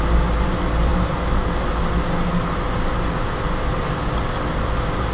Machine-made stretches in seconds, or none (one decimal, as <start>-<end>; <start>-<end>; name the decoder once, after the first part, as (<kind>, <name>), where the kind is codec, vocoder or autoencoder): none